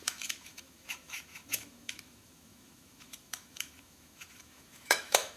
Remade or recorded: remade